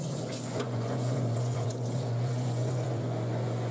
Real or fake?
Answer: fake